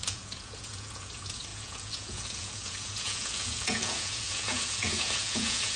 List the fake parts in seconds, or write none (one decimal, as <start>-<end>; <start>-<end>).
0.0-5.8